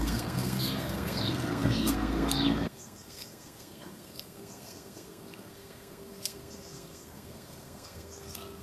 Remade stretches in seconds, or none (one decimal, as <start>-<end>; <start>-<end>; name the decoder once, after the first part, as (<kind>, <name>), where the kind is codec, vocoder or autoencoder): 0.0-8.6 (codec, SNAC)